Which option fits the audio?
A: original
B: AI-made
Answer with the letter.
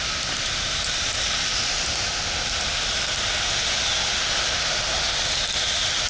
A